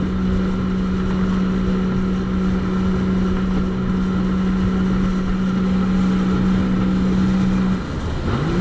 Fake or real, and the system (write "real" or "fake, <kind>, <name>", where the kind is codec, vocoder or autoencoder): real